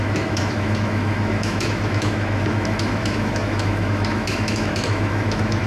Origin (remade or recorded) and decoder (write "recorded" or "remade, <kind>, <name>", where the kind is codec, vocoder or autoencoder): remade, autoencoder, DAC-VAE